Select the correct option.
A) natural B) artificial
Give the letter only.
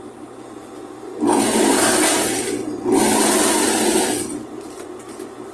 A